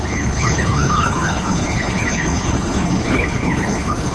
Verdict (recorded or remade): remade